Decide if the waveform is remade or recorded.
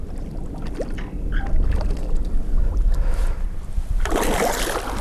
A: remade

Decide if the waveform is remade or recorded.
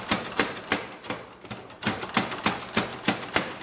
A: remade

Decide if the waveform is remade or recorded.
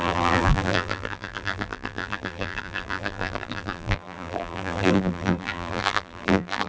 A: remade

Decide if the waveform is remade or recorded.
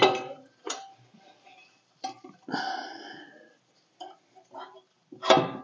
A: remade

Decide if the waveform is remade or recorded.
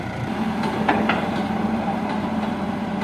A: remade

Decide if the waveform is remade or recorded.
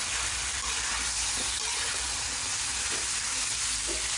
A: recorded